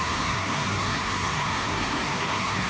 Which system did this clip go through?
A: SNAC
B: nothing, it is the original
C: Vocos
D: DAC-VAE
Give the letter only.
A